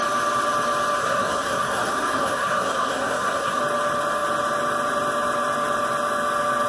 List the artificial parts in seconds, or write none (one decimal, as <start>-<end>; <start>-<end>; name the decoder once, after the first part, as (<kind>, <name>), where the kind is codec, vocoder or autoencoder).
1.0-3.6 (codec, SNAC)